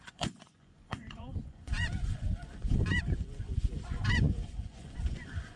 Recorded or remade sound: remade